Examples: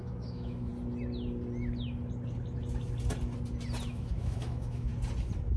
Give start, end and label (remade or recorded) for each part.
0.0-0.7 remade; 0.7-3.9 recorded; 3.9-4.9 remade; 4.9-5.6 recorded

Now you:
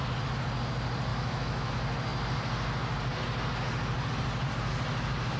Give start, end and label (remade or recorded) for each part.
0.0-1.1 recorded; 1.1-1.7 remade; 1.7-5.4 recorded

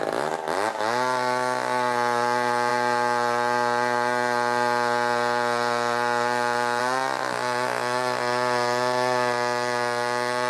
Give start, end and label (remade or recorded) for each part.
0.0-10.5 recorded

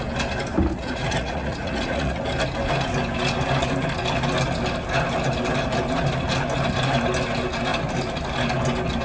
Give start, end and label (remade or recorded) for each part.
0.0-0.7 recorded; 0.7-2.2 remade; 2.2-9.0 recorded

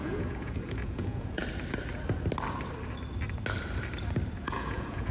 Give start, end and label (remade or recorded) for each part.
0.0-1.4 remade; 1.4-4.4 recorded; 4.4-5.1 remade

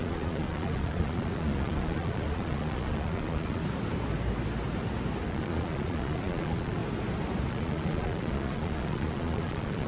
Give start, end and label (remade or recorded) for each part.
0.0-3.6 remade; 3.6-5.3 recorded; 5.3-6.8 remade; 6.8-7.5 recorded; 7.5-9.9 remade

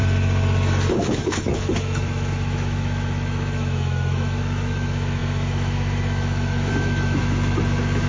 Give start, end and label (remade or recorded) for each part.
0.0-0.9 recorded; 0.9-8.1 remade